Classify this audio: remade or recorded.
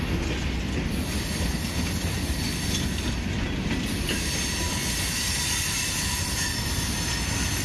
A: recorded